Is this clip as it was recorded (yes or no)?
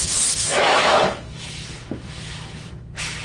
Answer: no